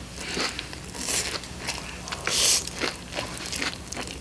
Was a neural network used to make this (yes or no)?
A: no